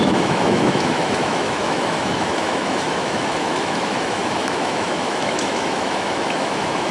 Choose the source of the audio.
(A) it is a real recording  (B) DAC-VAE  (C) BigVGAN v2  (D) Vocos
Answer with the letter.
B